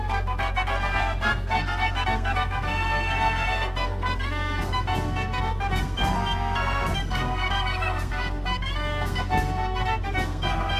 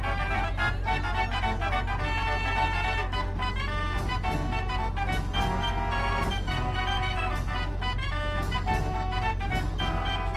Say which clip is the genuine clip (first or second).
second